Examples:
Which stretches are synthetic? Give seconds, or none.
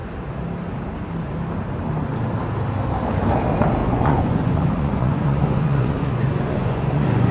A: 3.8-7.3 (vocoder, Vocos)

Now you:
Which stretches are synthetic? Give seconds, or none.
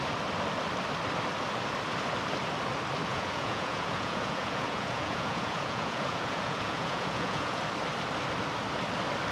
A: 3.1-7.6 (vocoder, Vocos)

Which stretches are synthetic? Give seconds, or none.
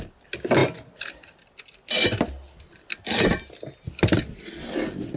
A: none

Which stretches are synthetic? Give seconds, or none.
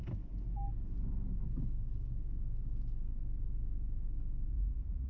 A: 4.5-5.1 (vocoder, Vocos)